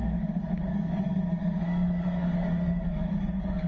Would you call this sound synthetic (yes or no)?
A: yes